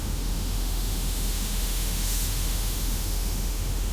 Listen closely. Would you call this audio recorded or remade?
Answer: remade